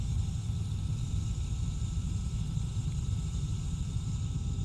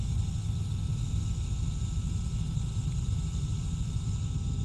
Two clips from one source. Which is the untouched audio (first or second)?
second